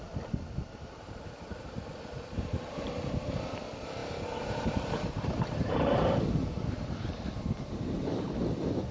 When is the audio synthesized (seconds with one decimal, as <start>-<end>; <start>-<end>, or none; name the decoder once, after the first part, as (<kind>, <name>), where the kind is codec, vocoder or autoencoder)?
0.7-3.3 (vocoder, BigVGAN v2); 4.0-7.4